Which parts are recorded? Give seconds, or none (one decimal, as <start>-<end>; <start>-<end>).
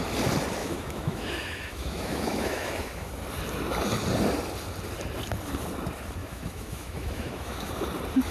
0.0-0.6; 3.1-6.2; 7.7-8.3